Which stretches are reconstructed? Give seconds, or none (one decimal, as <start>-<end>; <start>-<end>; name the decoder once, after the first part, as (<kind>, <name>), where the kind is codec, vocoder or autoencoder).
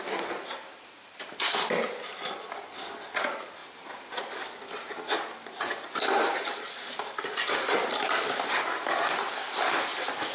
none